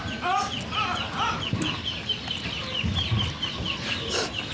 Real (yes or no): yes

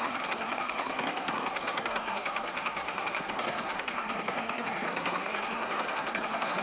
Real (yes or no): no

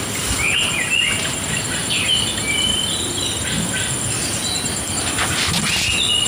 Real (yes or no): yes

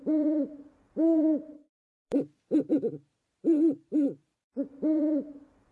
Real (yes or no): no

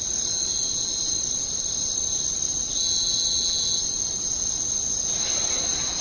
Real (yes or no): yes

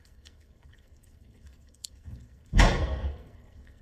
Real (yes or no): no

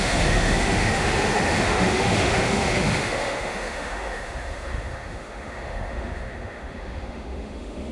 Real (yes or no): no